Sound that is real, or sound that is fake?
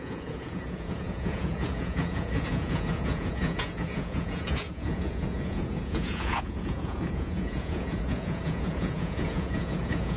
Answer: fake